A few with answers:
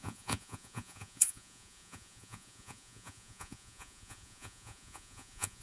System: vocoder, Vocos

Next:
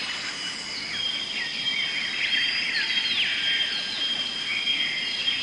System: none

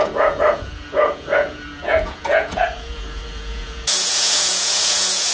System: vocoder, Vocos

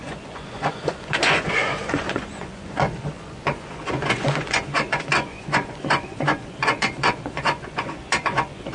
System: vocoder, Vocos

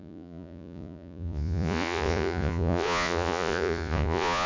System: vocoder, Vocos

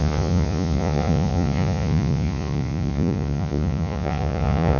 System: vocoder, Vocos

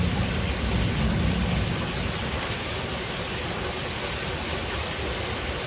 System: none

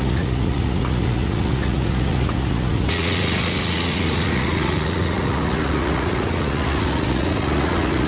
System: vocoder, Vocos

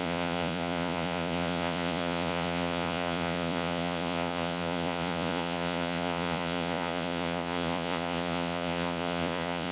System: vocoder, Vocos